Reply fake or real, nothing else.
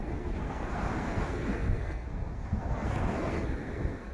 fake